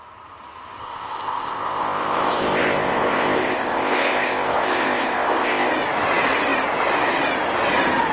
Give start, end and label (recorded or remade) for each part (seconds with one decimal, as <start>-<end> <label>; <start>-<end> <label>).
0.0-0.8 recorded; 0.8-5.7 remade; 5.7-8.1 recorded